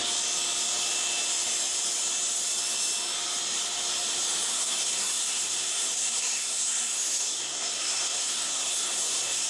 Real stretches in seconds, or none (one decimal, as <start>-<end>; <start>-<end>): 0.0-4.5